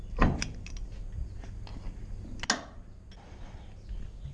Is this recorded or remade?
recorded